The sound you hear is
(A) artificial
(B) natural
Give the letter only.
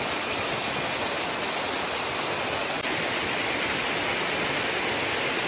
B